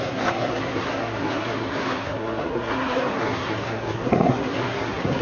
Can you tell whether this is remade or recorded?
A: remade